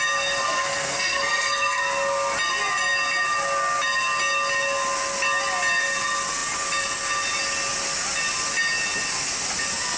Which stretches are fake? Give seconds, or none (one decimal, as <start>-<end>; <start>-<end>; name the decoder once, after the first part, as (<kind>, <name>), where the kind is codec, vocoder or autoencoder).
0.4-1.8 (codec, SNAC)